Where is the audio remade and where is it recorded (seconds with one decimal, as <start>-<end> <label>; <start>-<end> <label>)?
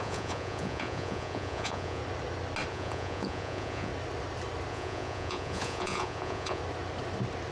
0.0-2.0 remade; 2.0-2.7 recorded; 2.7-3.9 remade; 3.9-4.7 recorded; 4.7-6.6 remade; 6.6-7.5 recorded